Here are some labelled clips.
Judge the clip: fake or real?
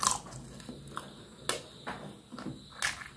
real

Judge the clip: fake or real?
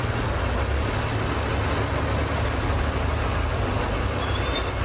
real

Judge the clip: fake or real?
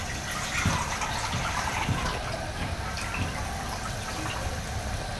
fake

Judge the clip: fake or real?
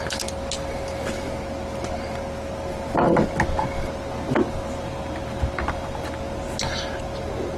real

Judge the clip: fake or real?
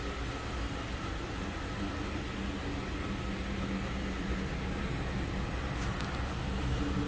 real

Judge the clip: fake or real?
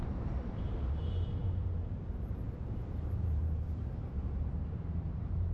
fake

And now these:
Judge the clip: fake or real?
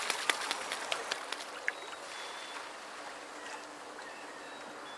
real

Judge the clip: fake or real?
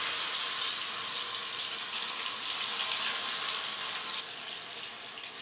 fake